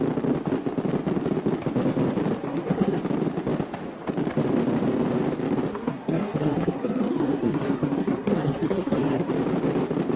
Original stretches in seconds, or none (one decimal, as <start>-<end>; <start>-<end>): 0.0-2.4; 3.0-5.7; 9.3-10.2